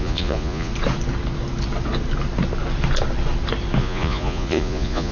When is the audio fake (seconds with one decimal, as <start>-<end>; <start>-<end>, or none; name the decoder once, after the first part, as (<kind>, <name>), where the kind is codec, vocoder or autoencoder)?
0.0-0.7 (vocoder, Vocos); 3.8-5.1